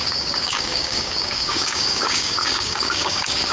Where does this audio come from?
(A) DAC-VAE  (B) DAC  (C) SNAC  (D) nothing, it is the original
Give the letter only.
B